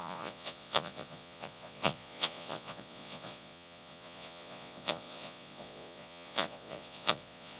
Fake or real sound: fake